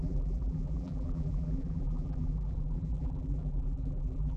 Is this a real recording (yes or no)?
no